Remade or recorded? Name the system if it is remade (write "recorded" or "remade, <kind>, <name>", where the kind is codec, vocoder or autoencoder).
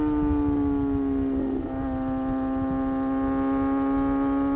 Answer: recorded